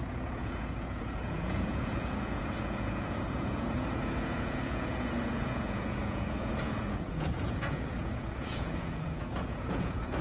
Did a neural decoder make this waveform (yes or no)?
yes